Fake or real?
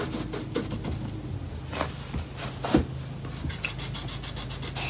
real